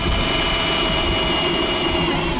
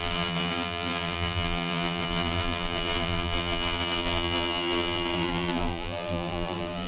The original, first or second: first